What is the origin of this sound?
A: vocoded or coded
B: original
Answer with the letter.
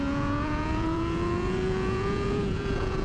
A